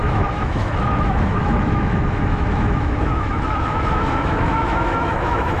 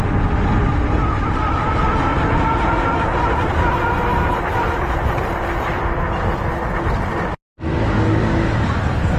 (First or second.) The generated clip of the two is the first